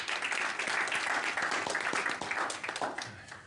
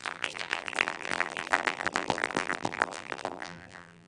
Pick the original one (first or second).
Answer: first